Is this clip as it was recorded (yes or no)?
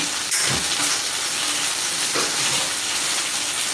yes